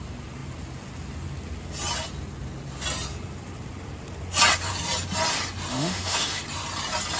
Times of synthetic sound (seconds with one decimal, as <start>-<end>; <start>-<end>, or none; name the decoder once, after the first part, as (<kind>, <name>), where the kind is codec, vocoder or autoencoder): 5.7-6.4 (autoencoder, DAC-VAE)